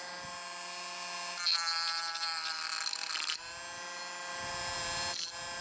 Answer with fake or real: real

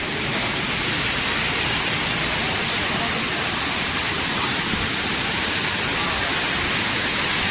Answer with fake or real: real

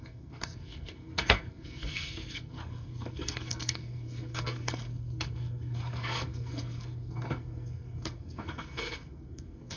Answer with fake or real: fake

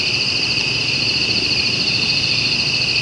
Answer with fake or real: fake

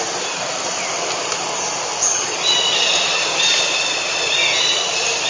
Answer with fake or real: real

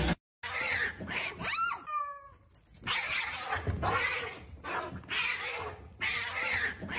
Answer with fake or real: real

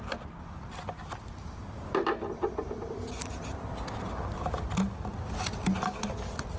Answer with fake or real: real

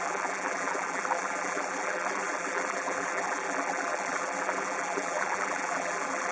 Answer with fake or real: fake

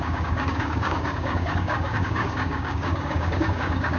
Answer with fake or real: fake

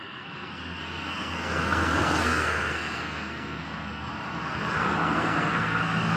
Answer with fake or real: fake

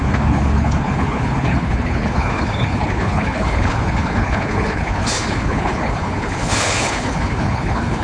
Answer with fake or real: fake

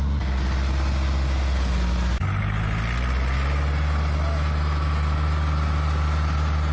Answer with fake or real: real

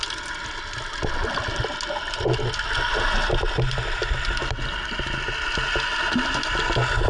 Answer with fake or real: real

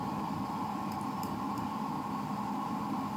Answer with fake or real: real